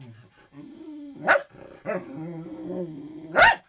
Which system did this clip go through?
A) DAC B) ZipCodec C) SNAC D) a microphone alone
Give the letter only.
D